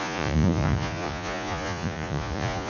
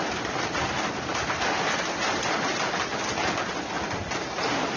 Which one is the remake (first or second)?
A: first